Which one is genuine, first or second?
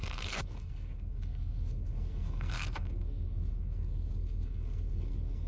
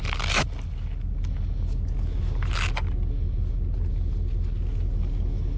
second